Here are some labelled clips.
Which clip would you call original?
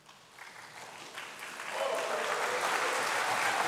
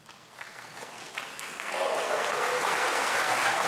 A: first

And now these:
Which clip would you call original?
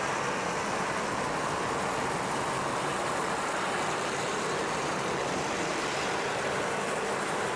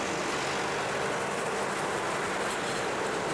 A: second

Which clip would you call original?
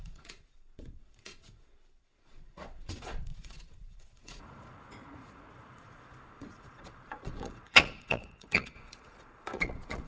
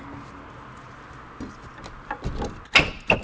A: second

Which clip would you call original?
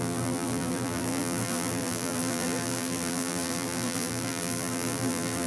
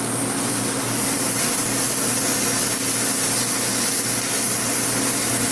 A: second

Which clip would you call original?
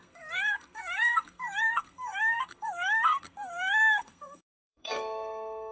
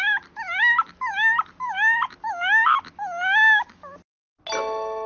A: second